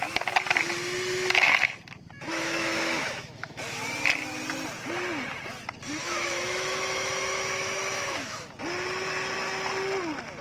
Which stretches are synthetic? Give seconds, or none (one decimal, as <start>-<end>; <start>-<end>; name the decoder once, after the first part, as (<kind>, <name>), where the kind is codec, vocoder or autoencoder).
2.3-3.8 (autoencoder, DAC-VAE); 6.0-8.5